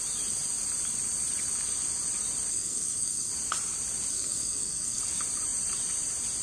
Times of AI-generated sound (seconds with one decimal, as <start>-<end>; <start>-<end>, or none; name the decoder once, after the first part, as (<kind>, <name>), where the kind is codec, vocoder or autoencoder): 2.5-3.3 (codec, SNAC); 4.1-5.0